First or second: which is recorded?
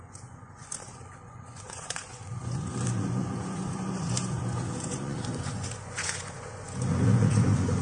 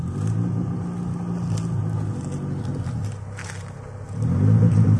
second